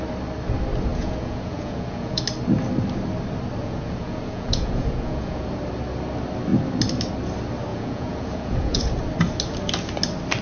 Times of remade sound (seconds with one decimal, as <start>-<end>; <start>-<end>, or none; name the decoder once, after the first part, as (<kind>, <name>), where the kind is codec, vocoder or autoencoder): 0.9-2.2 (vocoder, Vocos); 3.6-5.5; 7.7-8.8